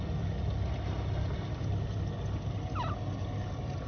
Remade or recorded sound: recorded